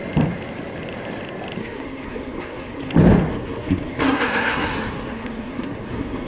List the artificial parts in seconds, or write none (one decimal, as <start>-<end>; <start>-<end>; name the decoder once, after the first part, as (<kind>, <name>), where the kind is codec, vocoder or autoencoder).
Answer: 1.6-2.9 (codec, SNAC); 3.3-6.3